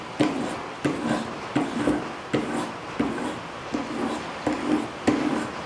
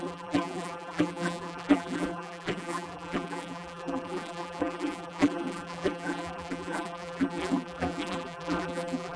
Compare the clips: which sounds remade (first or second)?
second